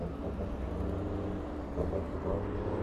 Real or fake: real